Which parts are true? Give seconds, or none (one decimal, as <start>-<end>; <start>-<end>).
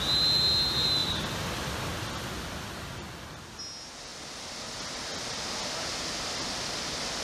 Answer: 0.0-7.2